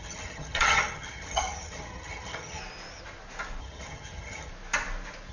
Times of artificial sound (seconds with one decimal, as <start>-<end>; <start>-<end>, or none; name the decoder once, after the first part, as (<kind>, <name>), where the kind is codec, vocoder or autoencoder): 0.0-2.6 (vocoder, HiFi-GAN); 3.6-4.5